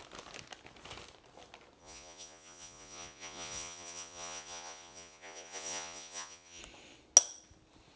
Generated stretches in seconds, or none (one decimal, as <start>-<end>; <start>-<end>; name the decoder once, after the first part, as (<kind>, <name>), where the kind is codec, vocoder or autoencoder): 1.8-6.6 (vocoder, Vocos)